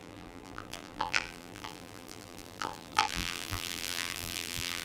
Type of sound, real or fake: fake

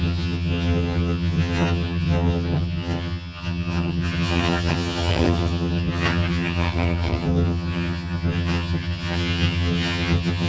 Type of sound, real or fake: fake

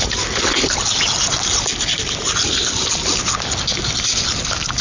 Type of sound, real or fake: real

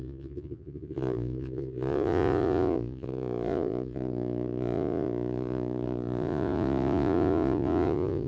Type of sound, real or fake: fake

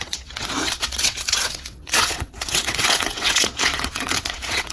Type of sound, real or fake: fake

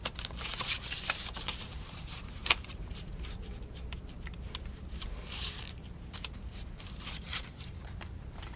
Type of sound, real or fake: fake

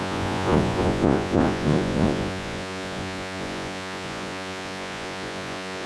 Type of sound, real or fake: fake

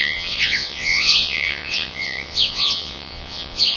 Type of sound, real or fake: fake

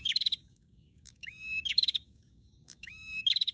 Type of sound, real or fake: fake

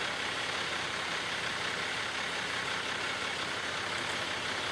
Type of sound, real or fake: real